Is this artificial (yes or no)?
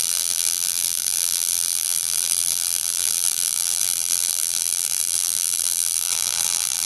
yes